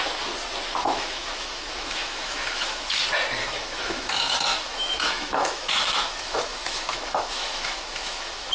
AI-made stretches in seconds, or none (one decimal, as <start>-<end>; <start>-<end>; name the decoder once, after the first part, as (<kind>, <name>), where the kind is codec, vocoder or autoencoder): 0.8-3.0 (autoencoder, DAC-VAE); 3.4-8.5